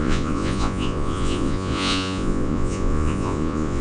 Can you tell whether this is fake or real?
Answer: fake